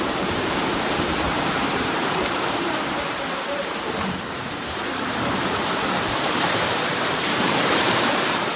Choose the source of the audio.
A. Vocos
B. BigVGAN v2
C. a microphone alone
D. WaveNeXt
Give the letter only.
B